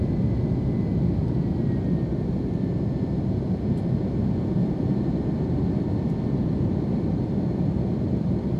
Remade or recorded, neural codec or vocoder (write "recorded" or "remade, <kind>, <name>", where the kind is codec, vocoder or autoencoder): recorded